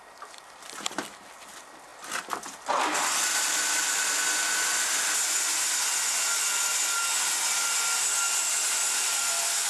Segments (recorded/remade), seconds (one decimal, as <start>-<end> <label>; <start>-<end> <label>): 0.0-9.7 recorded